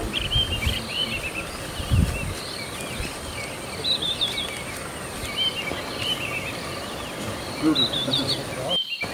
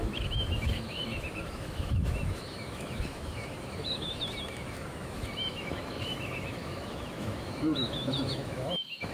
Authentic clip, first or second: first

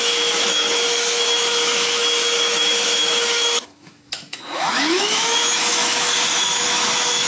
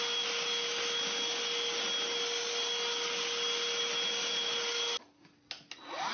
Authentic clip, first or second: second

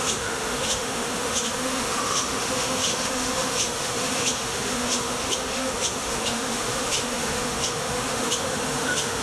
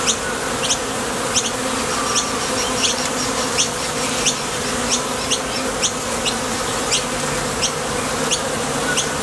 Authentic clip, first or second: second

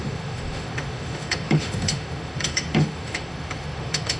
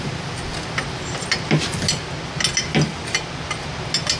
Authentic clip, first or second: second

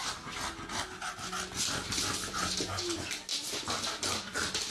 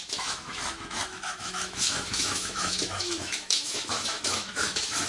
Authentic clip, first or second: first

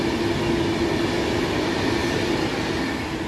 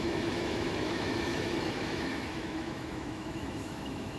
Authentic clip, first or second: first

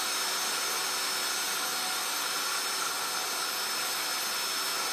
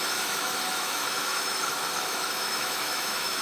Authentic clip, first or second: first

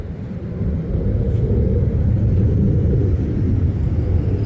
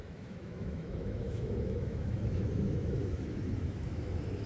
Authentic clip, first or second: first